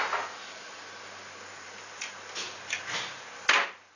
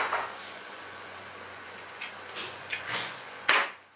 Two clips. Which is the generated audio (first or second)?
second